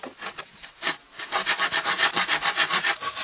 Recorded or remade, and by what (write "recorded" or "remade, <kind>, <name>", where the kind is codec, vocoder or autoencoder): recorded